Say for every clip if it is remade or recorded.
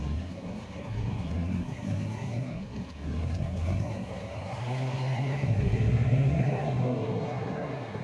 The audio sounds remade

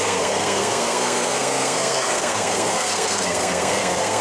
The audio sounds remade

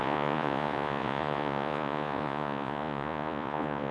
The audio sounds remade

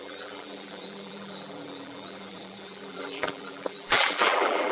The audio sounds remade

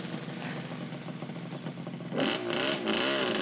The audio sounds recorded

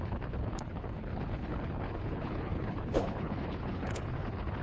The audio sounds remade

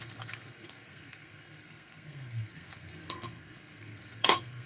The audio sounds remade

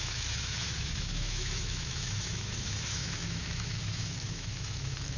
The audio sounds remade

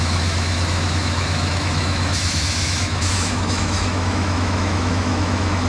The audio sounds remade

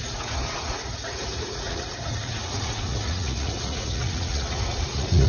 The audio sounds remade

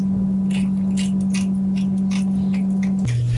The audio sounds recorded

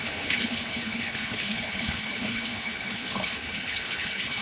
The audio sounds remade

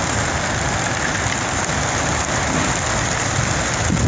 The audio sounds recorded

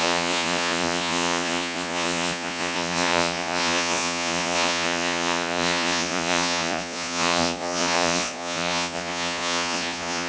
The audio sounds remade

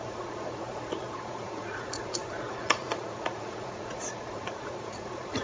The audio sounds remade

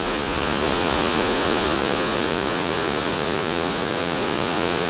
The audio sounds remade